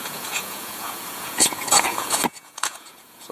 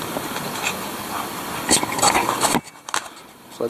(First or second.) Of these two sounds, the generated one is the first